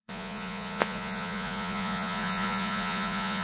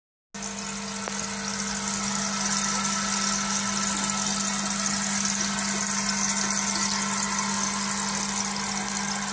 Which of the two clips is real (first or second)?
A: second